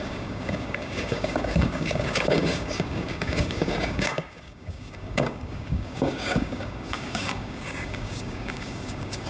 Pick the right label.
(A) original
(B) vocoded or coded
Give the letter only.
B